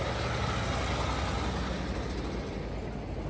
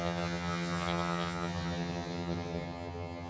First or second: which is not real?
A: second